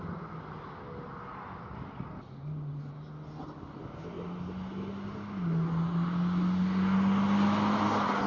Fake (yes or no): no